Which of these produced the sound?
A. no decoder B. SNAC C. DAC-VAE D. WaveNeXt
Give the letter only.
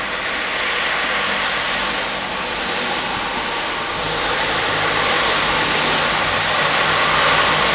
A